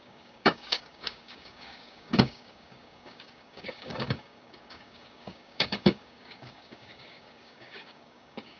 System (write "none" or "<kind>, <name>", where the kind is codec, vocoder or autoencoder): codec, DAC